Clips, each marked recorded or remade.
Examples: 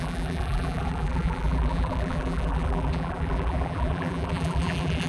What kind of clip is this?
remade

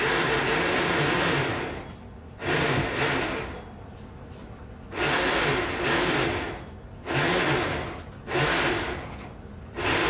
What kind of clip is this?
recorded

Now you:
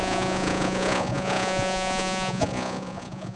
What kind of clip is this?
remade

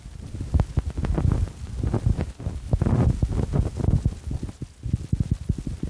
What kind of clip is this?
recorded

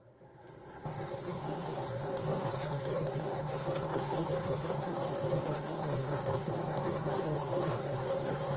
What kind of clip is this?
remade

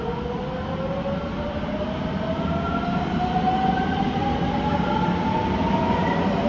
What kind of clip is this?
recorded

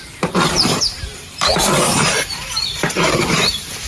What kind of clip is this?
remade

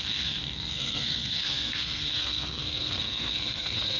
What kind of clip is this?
remade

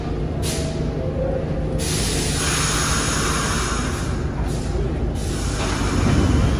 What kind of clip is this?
recorded